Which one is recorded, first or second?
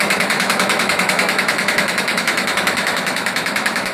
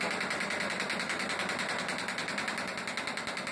second